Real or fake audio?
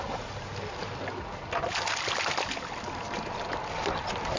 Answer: real